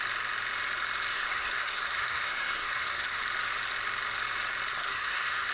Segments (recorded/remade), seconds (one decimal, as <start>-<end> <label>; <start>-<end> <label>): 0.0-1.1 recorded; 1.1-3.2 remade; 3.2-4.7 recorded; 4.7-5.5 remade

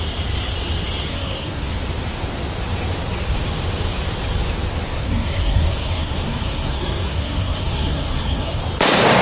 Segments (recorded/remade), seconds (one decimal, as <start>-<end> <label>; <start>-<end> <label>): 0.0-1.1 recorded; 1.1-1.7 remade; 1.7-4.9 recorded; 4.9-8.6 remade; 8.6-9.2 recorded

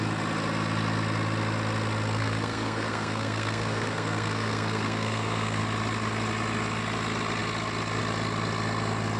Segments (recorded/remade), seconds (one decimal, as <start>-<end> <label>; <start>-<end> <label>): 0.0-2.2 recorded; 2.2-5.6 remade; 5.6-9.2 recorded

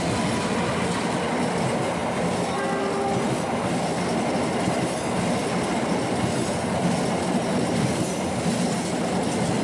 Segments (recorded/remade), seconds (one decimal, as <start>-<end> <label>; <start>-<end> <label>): 0.0-9.6 recorded

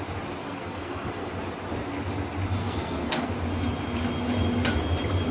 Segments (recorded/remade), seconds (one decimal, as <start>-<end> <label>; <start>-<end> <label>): 0.0-0.4 recorded; 0.4-1.3 remade; 1.3-2.6 recorded; 2.6-3.3 remade; 3.3-5.3 recorded